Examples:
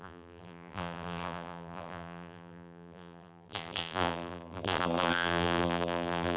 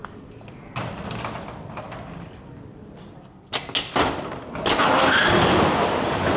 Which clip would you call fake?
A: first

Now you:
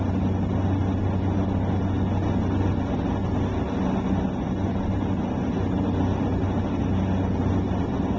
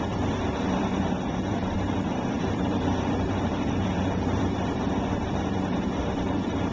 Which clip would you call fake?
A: second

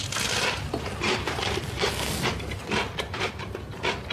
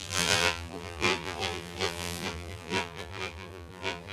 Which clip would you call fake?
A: second